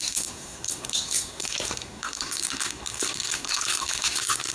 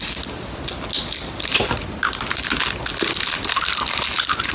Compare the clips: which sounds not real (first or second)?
first